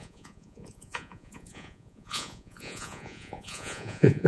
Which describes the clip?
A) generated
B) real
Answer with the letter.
A